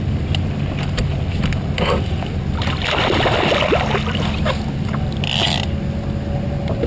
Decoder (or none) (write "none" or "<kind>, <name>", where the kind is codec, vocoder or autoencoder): none